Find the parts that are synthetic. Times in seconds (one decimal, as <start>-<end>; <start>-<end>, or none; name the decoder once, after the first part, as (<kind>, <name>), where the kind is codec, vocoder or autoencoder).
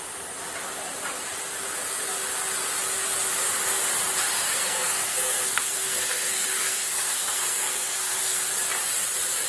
4.5-8.4 (codec, SNAC)